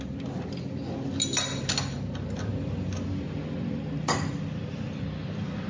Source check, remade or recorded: recorded